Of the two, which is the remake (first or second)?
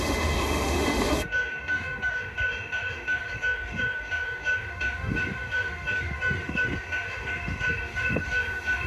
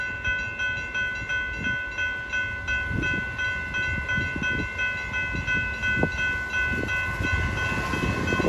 first